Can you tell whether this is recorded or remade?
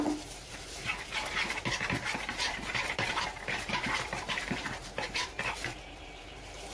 remade